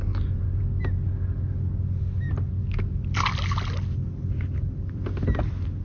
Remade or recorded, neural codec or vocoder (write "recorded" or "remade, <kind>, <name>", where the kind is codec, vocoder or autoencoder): recorded